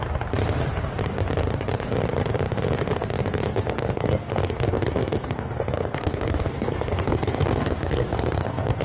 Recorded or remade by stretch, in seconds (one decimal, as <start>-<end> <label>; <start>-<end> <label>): 0.0-3.5 recorded; 3.5-8.8 remade